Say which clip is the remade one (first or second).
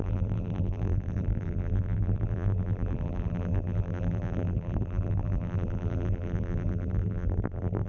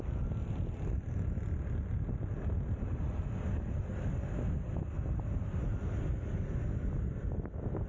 first